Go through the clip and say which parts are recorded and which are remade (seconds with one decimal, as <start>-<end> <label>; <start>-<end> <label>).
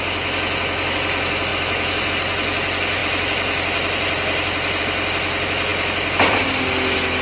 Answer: 0.0-7.2 recorded